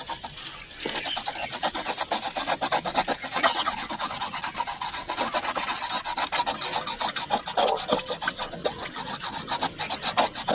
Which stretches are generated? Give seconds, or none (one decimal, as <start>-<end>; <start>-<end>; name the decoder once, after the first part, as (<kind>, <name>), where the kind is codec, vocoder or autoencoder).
1.4-1.9 (vocoder, WaveNeXt); 3.3-5.8; 8.6-9.3